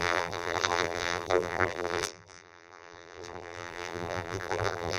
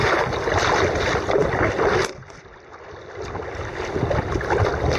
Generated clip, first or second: first